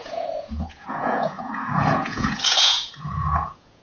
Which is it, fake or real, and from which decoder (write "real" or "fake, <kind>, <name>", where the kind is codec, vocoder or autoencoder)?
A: fake, vocoder, Vocos